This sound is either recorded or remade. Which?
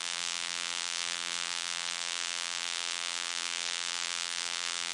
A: remade